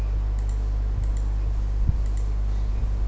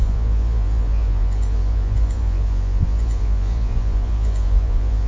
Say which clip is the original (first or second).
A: first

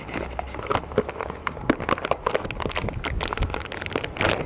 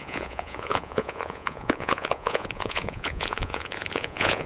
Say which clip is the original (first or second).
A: first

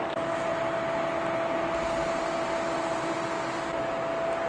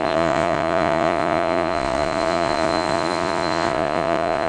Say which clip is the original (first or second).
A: first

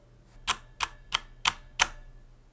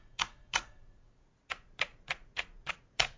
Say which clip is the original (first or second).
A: first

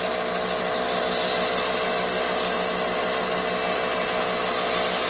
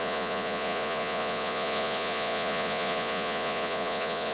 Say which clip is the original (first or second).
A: first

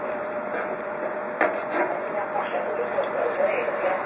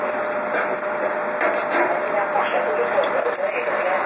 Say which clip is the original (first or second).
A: second